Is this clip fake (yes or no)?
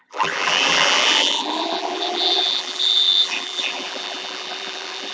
yes